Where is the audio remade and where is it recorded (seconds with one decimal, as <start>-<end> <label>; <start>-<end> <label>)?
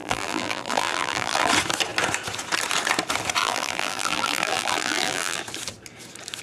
0.0-1.5 remade; 1.5-3.4 recorded; 3.4-5.4 remade; 5.4-6.4 recorded